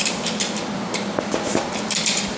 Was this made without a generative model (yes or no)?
yes